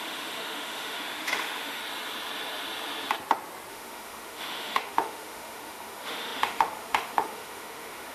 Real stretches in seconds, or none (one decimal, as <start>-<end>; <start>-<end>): 1.8-3.7